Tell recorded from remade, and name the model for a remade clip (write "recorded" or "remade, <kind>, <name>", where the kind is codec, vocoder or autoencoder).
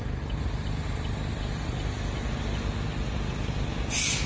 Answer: recorded